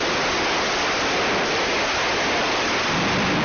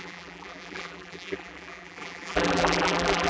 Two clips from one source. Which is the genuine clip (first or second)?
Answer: first